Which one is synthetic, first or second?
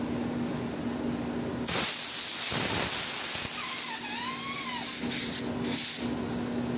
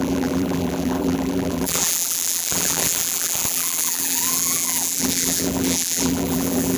second